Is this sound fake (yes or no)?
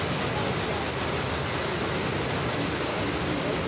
no